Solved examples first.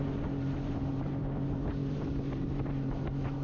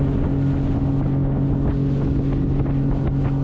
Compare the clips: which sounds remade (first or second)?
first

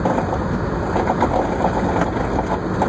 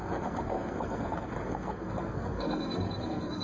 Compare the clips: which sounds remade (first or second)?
second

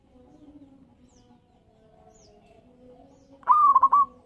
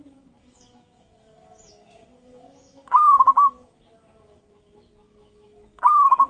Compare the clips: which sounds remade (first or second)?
second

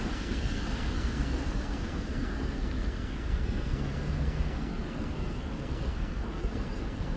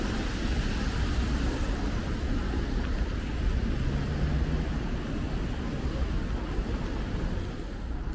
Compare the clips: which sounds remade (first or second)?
first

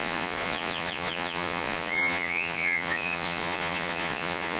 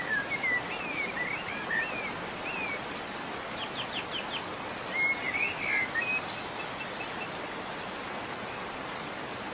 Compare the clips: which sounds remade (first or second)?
first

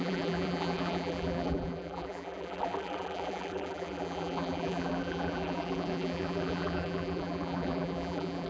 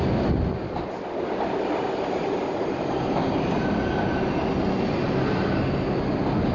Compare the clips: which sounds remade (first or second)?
first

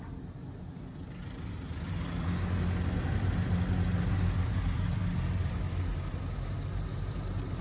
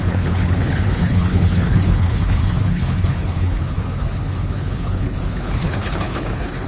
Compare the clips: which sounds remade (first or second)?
second